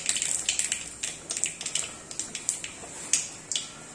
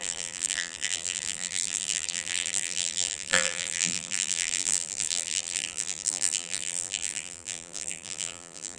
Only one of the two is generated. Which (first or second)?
second